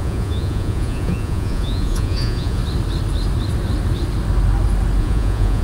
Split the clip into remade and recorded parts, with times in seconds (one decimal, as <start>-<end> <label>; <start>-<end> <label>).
0.0-2.6 remade; 2.6-5.0 recorded; 5.0-5.6 remade